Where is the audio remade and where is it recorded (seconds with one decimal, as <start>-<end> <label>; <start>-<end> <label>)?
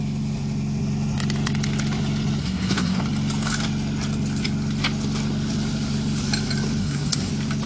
0.0-2.4 recorded; 2.4-3.0 remade; 3.0-6.8 recorded; 6.8-7.3 remade; 7.3-7.7 recorded